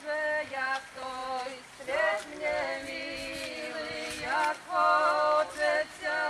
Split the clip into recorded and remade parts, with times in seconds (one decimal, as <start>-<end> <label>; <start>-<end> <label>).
0.0-6.3 recorded

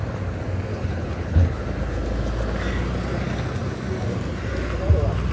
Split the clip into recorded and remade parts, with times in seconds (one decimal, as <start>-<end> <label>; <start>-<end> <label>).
0.0-0.7 recorded; 0.7-1.6 remade; 1.6-5.3 recorded

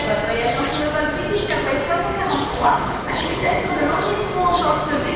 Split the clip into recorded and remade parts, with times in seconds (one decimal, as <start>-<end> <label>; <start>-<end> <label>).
0.0-2.5 recorded; 2.5-3.7 remade; 3.7-5.2 recorded

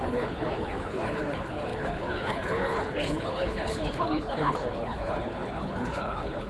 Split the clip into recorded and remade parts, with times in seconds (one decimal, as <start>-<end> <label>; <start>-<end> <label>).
0.0-6.5 remade

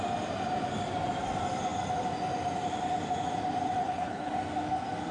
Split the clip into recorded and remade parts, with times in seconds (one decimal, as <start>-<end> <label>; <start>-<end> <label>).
0.0-3.8 recorded; 3.8-4.3 remade; 4.3-5.1 recorded

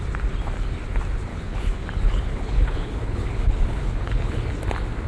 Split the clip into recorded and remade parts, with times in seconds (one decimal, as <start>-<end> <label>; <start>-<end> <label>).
0.0-1.3 recorded; 1.3-4.4 remade; 4.4-5.1 recorded